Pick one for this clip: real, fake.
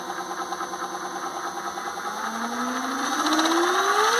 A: real